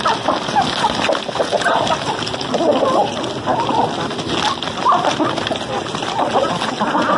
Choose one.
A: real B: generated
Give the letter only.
A